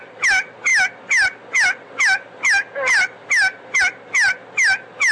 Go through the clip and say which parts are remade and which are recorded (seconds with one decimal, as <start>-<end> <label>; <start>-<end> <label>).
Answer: 0.0-5.1 recorded